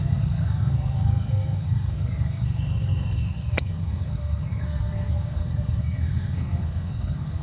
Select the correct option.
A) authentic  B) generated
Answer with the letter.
B